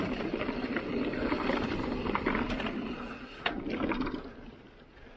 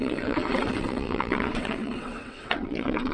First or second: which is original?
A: first